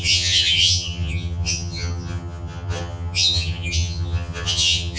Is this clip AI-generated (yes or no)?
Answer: yes